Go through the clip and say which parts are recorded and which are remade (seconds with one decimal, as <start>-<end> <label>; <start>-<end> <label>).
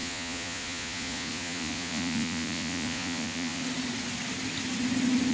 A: 0.0-3.6 remade; 3.6-5.3 recorded